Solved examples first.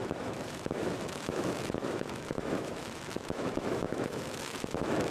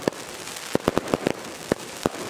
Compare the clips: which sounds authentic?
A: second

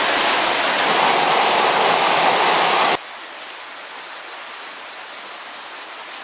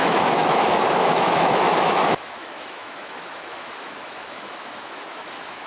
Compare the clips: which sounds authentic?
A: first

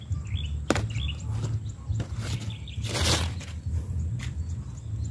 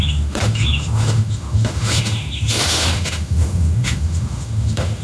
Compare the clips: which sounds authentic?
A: first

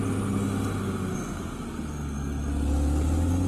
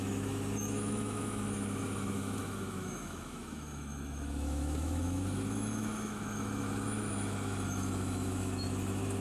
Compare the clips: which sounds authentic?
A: first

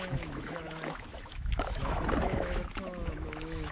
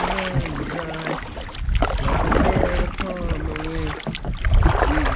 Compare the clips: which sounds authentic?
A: second